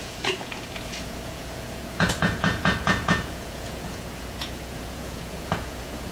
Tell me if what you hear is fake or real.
fake